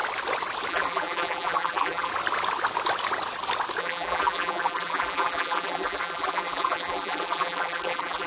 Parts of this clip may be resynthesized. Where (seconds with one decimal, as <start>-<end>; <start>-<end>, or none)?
0.7-2.1; 3.8-8.3